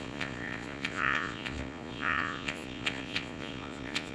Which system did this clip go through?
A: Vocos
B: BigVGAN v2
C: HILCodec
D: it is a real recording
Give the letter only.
A